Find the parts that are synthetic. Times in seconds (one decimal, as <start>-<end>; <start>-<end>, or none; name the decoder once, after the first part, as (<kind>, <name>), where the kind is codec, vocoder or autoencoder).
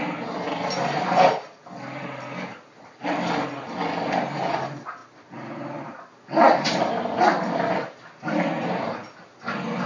5.0-6.9 (vocoder, BigVGAN v2)